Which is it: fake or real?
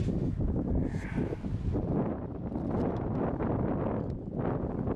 real